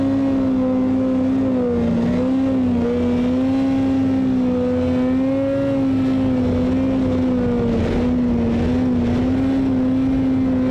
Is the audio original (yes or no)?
yes